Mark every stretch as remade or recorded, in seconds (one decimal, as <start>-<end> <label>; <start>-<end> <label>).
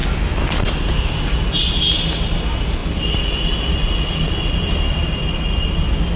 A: 0.0-6.2 recorded